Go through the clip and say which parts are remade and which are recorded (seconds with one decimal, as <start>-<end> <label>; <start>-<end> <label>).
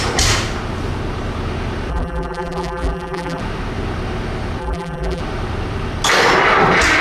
0.0-1.9 recorded; 1.9-3.4 remade; 3.4-4.6 recorded; 4.6-5.2 remade; 5.2-7.0 recorded